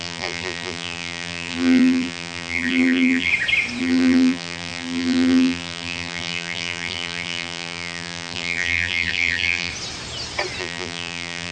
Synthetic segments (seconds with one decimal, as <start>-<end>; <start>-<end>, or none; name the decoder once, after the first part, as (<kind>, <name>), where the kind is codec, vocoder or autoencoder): 0.0-3.3 (vocoder, BigVGAN v2); 3.8-9.7; 10.6-11.5